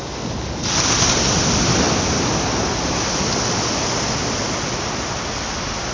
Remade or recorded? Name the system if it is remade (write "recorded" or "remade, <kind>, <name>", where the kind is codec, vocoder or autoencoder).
recorded